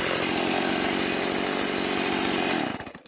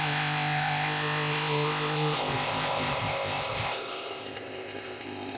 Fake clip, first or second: second